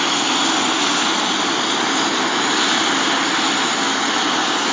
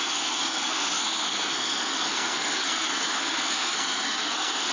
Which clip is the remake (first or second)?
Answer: second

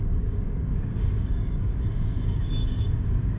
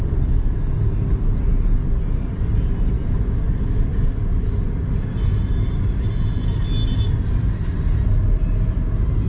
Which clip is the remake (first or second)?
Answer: first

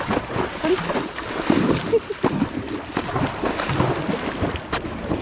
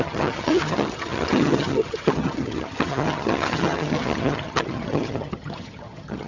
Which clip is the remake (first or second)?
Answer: second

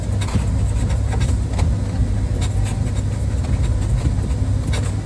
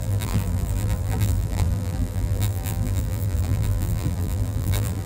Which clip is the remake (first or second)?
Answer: second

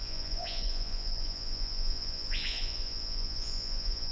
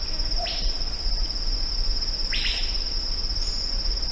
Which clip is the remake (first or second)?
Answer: first